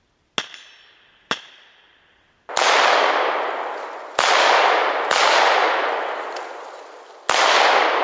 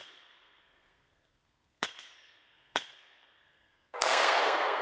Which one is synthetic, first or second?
second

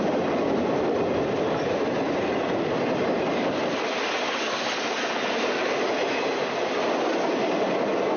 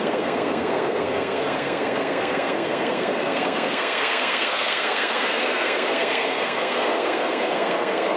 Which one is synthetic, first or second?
second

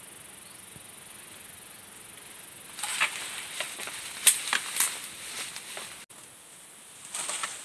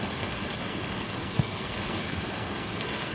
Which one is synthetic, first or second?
second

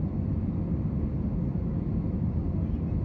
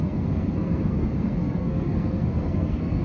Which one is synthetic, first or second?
second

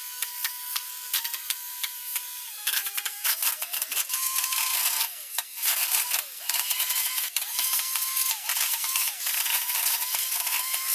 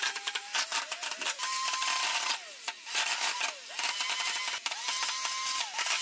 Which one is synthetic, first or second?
first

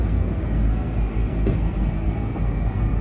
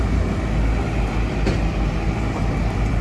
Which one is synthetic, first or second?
first